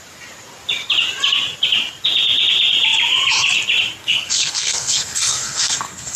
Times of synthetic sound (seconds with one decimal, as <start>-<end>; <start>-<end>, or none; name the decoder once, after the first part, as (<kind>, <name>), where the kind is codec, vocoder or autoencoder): 4.0-6.2 (codec, SNAC)